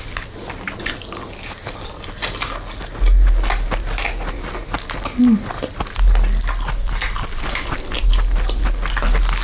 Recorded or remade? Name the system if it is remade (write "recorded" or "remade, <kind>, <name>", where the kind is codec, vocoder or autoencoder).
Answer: recorded